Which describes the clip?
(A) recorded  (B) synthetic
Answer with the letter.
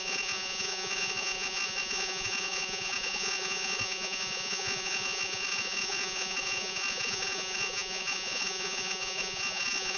B